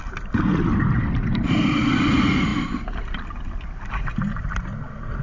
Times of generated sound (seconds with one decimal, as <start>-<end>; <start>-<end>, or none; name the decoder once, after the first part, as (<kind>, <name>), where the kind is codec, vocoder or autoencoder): none